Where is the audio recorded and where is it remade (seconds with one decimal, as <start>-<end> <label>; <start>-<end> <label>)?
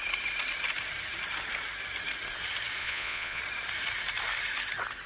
0.0-2.8 recorded; 2.8-3.4 remade; 3.4-5.1 recorded